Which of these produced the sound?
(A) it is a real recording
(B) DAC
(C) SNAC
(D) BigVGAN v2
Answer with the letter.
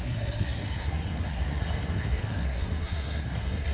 C